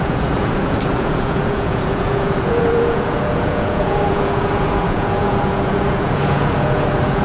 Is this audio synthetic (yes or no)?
yes